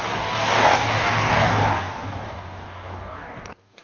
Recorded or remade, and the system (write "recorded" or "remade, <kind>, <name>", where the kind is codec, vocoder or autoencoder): remade, codec, DAC